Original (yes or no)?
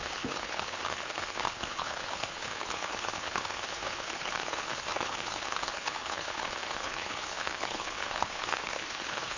no